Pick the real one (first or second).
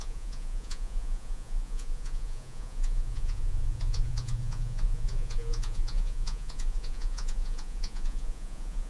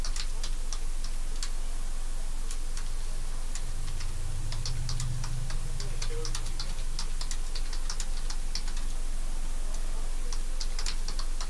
second